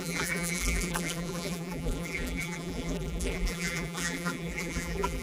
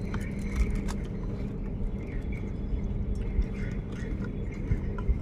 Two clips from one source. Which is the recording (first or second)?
second